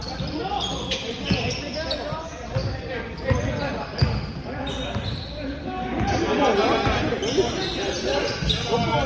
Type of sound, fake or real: real